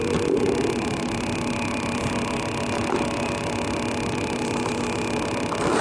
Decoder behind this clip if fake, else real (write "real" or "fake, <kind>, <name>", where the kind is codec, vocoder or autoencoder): real